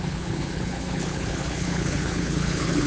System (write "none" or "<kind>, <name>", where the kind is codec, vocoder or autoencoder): codec, HILCodec